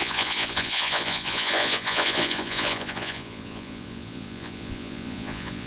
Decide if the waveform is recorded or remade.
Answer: remade